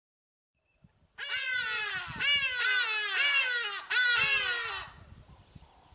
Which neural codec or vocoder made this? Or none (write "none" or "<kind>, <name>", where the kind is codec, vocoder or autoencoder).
none